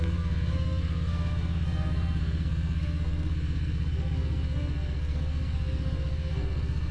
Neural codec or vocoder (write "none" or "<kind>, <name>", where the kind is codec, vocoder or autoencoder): codec, SNAC